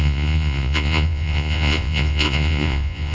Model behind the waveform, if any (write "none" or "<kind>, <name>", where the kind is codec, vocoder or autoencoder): vocoder, Vocos